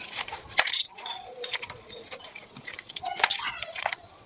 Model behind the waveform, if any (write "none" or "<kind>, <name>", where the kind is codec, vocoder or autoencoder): vocoder, Vocos